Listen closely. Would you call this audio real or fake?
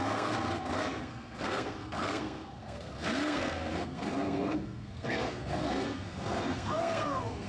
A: fake